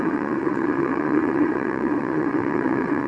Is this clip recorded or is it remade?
remade